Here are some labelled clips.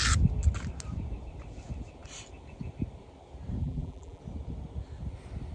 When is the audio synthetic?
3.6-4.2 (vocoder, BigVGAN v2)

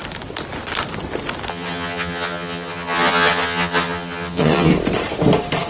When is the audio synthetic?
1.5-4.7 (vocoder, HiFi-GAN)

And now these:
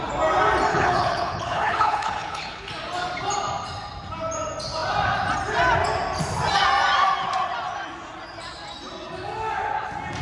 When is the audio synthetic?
0.7-2.7 (codec, HILCodec)

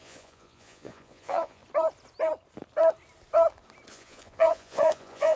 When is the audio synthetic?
0.0-1.6 (vocoder, Vocos); 3.9-5.4

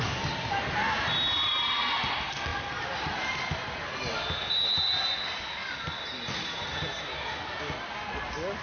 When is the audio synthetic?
none